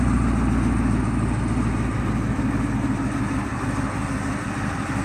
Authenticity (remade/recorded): recorded